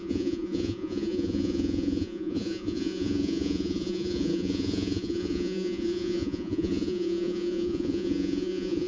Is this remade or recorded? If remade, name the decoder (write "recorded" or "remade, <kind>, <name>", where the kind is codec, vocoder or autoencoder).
remade, vocoder, Vocos